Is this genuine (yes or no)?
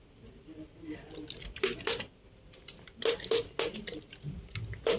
yes